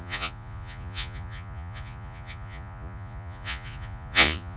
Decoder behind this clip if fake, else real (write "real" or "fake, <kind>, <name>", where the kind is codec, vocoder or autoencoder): fake, vocoder, Vocos